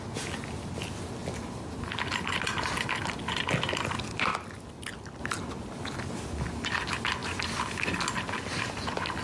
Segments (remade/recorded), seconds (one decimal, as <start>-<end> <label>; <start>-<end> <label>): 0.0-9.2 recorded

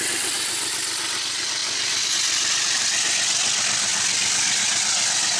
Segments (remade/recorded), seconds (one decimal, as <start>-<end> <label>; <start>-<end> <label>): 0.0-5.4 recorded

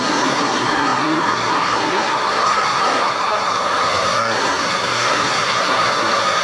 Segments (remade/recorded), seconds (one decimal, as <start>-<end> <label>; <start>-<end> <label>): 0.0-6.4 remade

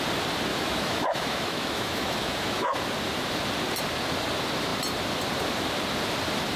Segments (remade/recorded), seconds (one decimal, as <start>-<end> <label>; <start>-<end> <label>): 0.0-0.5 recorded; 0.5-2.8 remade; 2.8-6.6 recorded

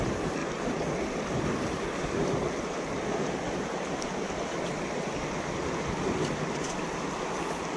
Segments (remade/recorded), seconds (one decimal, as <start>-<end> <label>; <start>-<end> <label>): 0.0-7.8 recorded

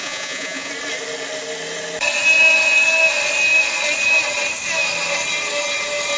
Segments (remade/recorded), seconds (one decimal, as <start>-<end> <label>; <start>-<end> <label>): 0.0-0.7 remade; 0.7-6.2 recorded